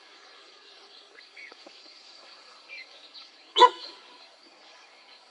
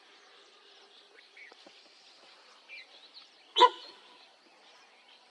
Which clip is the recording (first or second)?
second